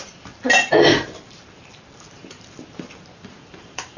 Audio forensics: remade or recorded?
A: remade